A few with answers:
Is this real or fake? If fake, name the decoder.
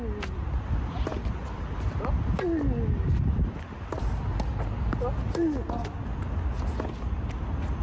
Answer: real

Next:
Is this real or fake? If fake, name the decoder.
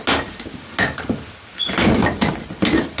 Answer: real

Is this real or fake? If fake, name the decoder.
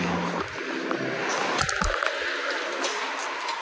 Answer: real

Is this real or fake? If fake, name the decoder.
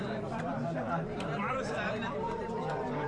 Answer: fake, vocoder, BigVGAN v2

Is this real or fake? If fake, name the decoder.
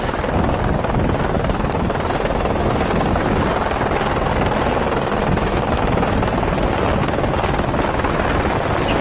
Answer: real